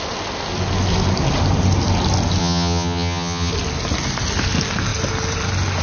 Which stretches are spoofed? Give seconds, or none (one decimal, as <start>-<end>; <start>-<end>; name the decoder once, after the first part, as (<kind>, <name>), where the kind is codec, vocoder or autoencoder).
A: 2.4-3.5 (vocoder, HiFi-GAN)